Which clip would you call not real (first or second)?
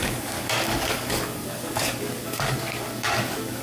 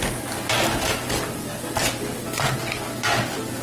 first